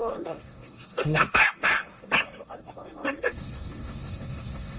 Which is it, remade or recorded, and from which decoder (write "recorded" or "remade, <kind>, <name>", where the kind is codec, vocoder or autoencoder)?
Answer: remade, codec, SNAC